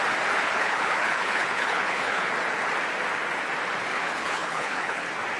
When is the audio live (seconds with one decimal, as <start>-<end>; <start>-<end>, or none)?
0.0-0.4; 2.3-3.9; 5.0-5.4